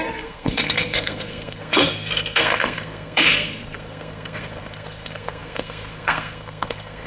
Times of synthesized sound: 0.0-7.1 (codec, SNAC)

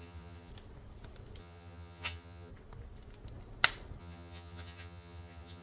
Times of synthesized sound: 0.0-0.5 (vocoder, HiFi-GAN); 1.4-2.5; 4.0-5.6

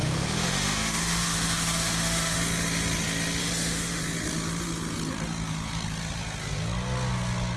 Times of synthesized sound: 0.0-2.4 (autoencoder, DAC-VAE); 3.4-4.0

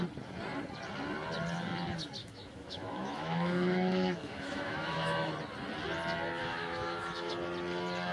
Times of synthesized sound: 2.2-5.3 (autoencoder, DAC-VAE); 6.4-7.3